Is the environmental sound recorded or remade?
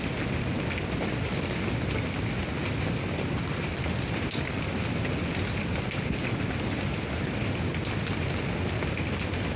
recorded